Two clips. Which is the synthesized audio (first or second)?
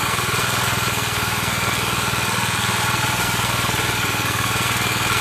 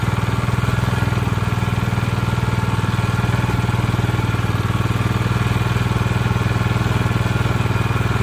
first